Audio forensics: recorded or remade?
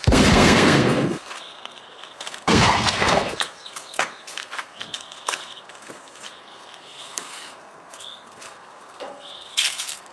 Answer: remade